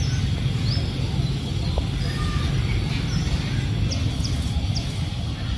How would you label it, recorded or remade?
recorded